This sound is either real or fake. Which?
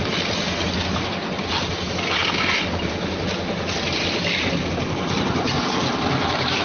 real